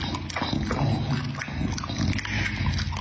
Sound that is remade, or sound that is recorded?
recorded